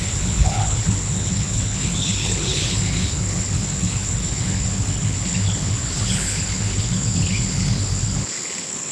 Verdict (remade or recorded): remade